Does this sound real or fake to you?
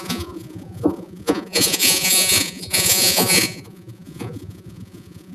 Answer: fake